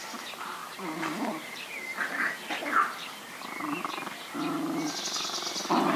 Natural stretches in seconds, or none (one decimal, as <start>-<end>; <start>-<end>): 0.0-0.6; 1.7-2.6; 3.3-6.0